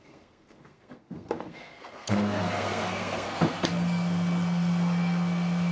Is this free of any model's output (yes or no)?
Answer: no